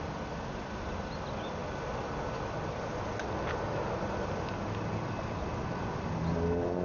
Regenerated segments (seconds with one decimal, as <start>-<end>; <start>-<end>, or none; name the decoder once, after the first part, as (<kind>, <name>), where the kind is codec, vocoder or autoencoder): none